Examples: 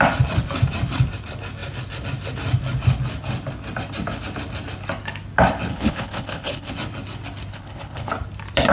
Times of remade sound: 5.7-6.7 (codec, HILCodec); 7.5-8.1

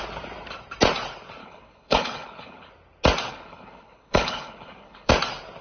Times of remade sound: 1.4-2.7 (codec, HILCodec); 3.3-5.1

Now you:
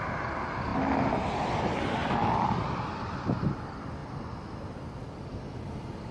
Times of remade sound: none

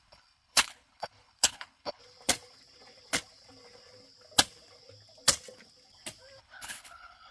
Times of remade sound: 0.0-2.0 (codec, HILCodec); 6.4-7.3

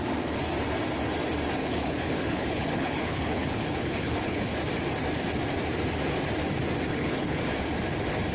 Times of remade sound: 1.6-4.5 (codec, HILCodec); 6.9-7.4

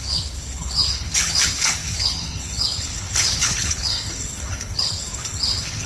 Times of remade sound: 0.0-5.9 (codec, HILCodec)

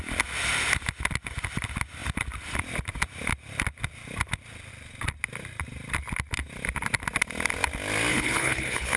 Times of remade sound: 8.1-9.0 (codec, HILCodec)